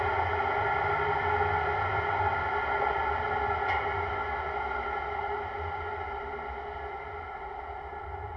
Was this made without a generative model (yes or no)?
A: yes